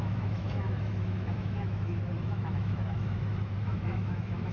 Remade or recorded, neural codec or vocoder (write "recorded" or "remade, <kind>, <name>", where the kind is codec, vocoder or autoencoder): remade, autoencoder, DAC-VAE